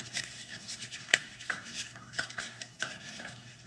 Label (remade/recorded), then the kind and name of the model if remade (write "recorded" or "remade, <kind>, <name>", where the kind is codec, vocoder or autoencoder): remade, codec, SNAC